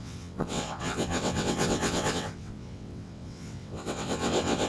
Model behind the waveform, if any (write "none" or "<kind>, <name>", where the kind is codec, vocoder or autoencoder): vocoder, WaveNeXt